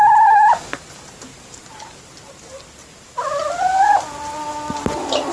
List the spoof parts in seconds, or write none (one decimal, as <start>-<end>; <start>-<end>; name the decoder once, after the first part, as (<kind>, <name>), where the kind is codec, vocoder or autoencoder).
none